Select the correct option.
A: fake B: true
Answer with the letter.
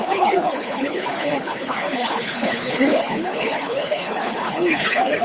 A